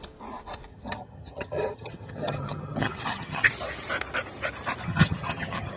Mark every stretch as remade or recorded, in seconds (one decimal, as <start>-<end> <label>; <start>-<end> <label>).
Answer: 0.0-0.7 recorded; 0.7-3.5 remade; 3.5-4.8 recorded; 4.8-5.8 remade